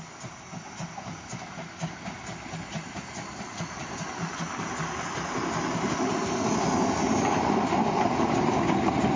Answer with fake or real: real